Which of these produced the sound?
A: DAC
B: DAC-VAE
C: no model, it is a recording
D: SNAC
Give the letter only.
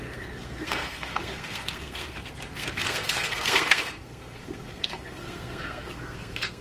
D